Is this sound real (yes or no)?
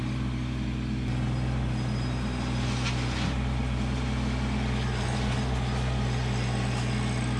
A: yes